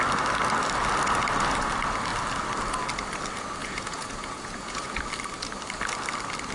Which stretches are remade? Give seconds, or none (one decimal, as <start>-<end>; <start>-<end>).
3.6-5.0